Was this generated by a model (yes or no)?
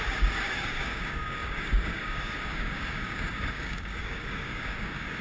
yes